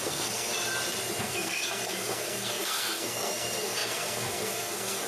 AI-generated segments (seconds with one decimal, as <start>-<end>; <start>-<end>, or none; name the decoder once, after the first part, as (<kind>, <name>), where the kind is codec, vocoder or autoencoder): 0.0-0.5 (codec, SNAC); 1.2-5.1